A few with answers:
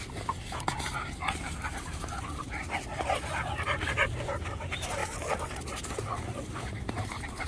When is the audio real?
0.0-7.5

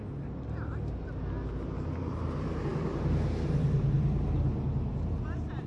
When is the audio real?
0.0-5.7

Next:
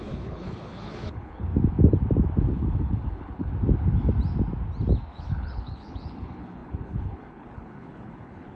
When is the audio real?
1.5-2.4; 3.5-5.1

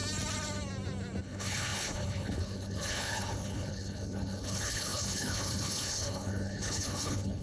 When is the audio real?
0.0-1.2

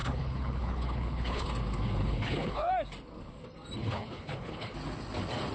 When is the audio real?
1.5-2.0; 2.7-3.8; 4.7-5.5

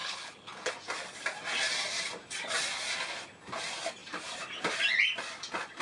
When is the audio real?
0.7-5.8